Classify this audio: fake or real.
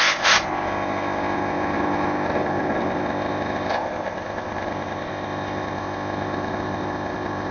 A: fake